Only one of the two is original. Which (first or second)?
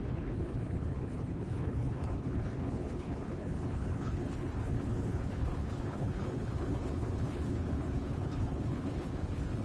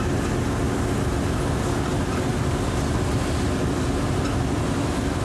second